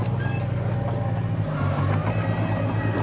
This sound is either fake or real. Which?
real